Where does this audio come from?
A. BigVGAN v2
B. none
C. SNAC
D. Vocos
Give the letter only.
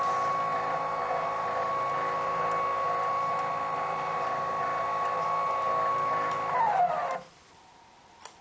B